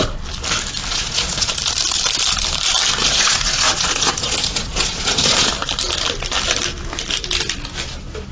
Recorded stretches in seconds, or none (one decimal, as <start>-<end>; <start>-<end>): 0.0-0.9; 1.5-3.0; 5.5-8.3